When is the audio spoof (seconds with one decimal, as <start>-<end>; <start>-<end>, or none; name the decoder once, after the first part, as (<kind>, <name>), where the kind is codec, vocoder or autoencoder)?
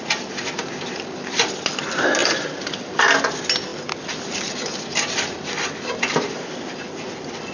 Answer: 3.7-6.9 (vocoder, BigVGAN v2)